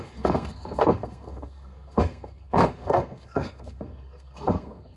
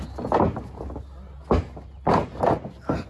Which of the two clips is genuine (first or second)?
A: second